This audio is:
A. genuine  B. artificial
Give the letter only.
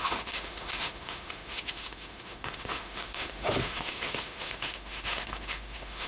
B